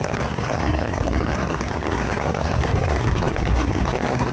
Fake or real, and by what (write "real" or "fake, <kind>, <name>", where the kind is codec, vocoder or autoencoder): fake, codec, SNAC